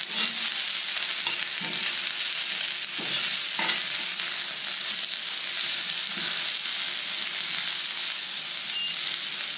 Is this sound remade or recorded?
recorded